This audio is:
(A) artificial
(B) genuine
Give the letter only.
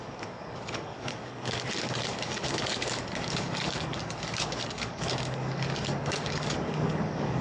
A